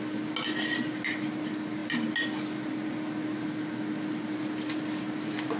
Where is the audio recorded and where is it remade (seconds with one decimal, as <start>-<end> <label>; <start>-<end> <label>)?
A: 0.0-5.6 recorded